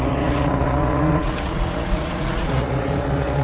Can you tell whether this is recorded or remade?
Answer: remade